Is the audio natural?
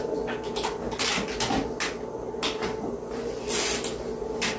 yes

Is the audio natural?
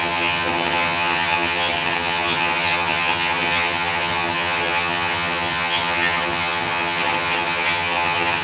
no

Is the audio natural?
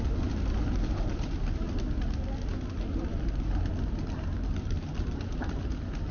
yes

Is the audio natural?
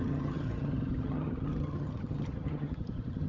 no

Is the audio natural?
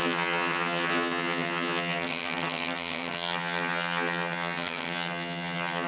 no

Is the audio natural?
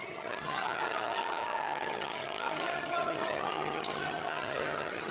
no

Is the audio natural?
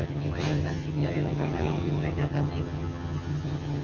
no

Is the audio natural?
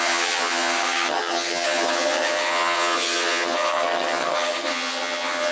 no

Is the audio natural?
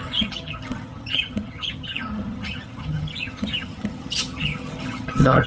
no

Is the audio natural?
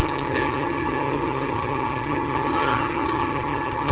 no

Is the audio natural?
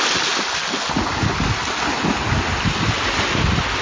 yes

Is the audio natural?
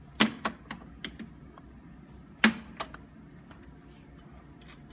yes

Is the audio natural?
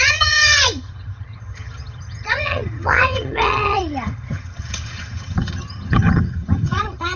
no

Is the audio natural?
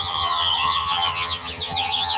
no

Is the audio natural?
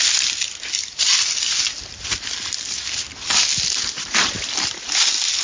yes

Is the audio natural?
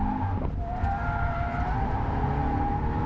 yes